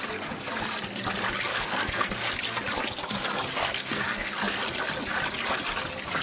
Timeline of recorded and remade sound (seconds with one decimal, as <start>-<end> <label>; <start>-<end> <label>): 0.0-1.5 recorded; 1.5-2.1 remade; 2.1-3.6 recorded; 3.6-4.6 remade; 4.6-6.2 recorded